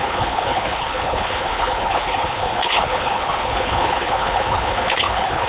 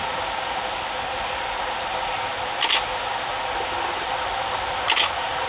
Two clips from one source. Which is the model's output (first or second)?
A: first